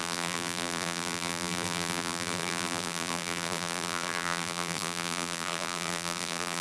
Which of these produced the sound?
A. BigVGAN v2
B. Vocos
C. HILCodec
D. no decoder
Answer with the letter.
A